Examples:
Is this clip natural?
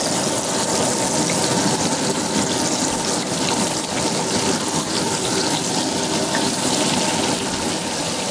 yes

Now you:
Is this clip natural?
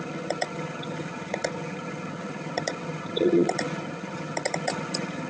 no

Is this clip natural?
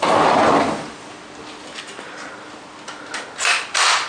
yes